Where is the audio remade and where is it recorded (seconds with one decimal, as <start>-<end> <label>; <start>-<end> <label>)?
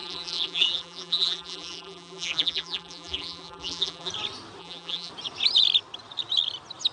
0.0-4.1 remade; 4.1-4.6 recorded; 4.6-5.1 remade; 5.1-6.9 recorded